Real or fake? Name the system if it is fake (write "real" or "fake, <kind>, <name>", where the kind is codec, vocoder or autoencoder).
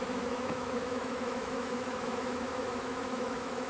fake, autoencoder, DAC-VAE